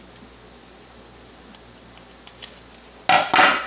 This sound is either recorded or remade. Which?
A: recorded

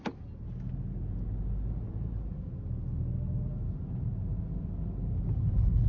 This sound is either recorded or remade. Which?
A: recorded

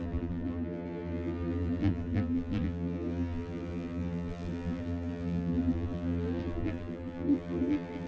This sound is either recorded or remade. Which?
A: remade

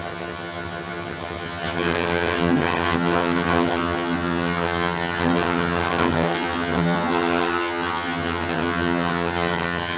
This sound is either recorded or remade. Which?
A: remade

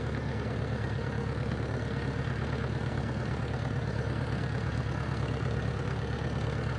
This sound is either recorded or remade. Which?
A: remade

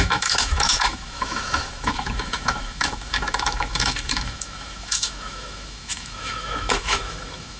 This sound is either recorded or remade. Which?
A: remade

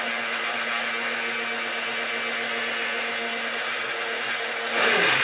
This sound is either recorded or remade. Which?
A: recorded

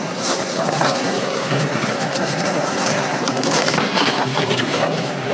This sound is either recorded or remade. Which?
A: remade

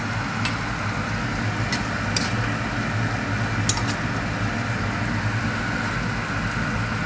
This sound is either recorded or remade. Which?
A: recorded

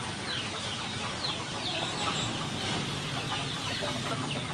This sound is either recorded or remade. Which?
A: recorded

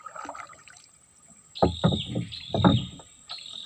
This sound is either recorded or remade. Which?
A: recorded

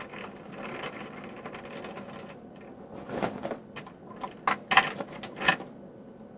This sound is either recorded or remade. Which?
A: recorded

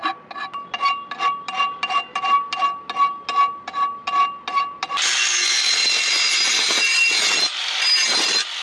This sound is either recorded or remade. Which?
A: recorded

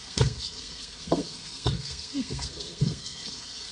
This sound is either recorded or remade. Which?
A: remade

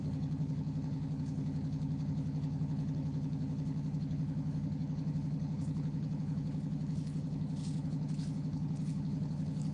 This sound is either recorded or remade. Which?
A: remade